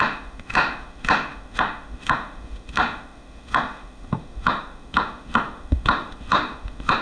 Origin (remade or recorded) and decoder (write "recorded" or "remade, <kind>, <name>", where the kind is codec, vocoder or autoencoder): remade, autoencoder, DAC-VAE